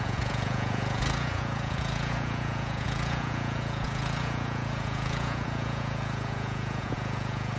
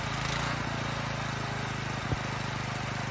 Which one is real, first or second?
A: second